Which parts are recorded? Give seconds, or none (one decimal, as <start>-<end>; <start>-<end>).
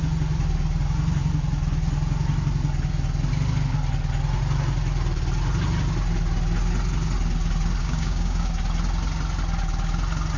0.0-7.8; 8.5-10.4